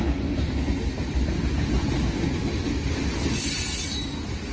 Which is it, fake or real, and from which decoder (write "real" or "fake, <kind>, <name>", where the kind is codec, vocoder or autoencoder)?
real